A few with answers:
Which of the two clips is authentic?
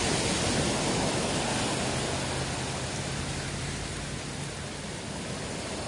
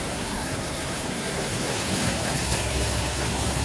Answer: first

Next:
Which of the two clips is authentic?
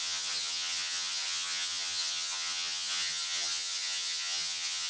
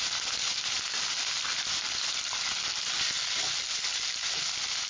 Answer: second